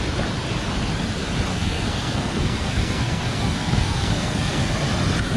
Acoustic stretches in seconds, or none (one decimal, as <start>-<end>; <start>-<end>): 0.0-1.5; 4.7-5.4